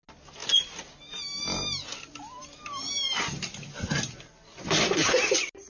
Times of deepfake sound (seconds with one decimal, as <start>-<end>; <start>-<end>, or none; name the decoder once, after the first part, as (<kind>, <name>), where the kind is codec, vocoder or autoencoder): none